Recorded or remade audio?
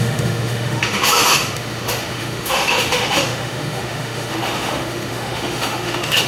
remade